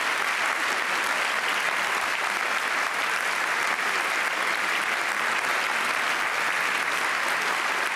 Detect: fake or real real